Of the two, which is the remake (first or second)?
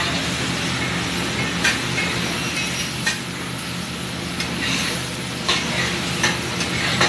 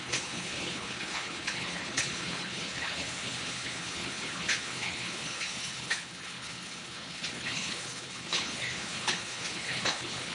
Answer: second